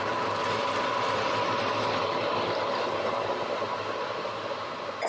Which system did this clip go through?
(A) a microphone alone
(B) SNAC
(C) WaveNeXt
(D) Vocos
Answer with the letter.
A